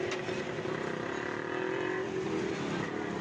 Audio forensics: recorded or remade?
recorded